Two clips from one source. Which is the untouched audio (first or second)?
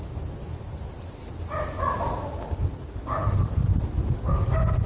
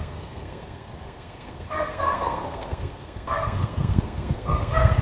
first